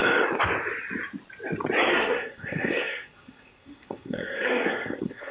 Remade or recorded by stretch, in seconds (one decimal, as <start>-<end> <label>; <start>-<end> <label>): 0.0-1.9 recorded; 1.9-5.3 remade